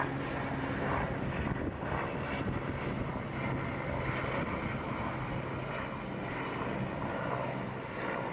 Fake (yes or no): no